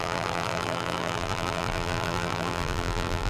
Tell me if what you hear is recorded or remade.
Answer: remade